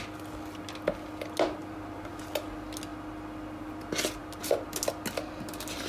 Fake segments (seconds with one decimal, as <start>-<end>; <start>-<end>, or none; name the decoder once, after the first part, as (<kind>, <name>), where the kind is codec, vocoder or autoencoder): 1.6-2.1 (vocoder, BigVGAN v2)